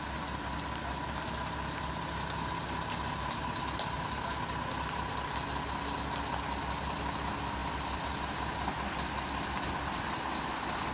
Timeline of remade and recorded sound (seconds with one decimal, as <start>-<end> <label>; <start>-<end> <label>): 0.0-10.9 recorded